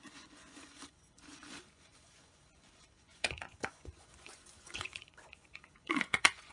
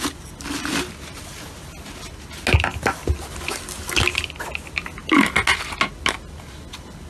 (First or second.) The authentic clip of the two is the second